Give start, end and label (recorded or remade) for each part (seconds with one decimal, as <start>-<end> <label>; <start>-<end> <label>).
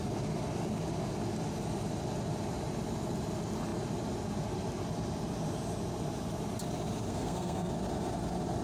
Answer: 0.0-7.1 recorded; 7.1-7.7 remade; 7.7-8.6 recorded